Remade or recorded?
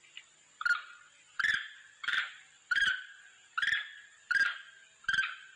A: recorded